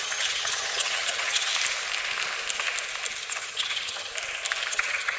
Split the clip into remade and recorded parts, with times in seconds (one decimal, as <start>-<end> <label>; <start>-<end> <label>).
0.0-1.5 remade; 1.5-3.3 recorded; 3.3-4.1 remade; 4.1-4.7 recorded; 4.7-5.2 remade